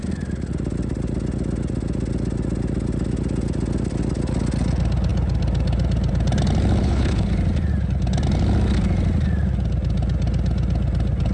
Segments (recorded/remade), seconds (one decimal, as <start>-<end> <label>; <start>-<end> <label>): 0.0-6.8 recorded; 6.8-7.3 remade; 7.3-11.3 recorded